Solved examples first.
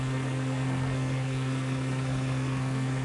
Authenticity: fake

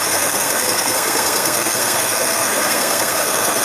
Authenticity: fake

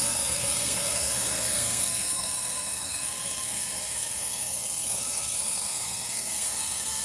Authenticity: fake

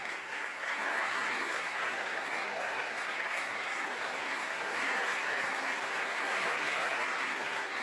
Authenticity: fake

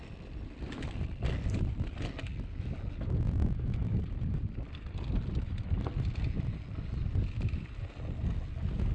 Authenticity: real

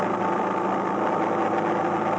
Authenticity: real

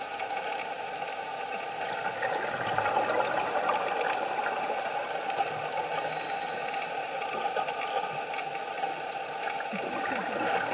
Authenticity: real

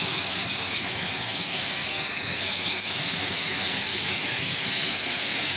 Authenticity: fake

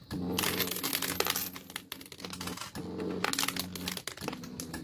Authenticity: real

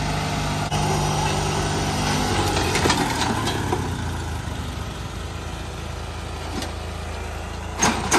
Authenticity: real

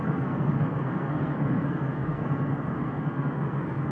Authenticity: fake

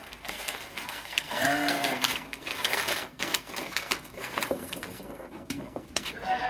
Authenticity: fake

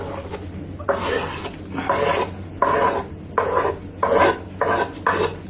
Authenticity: real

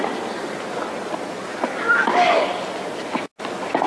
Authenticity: real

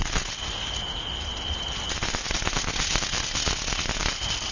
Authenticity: real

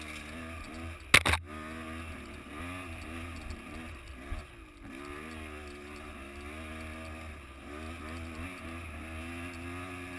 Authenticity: real